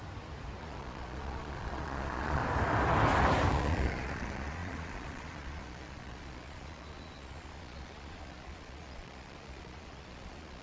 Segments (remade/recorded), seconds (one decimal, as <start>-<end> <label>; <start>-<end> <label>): 0.0-0.6 recorded; 0.6-2.4 remade; 2.4-3.5 recorded; 3.5-10.6 remade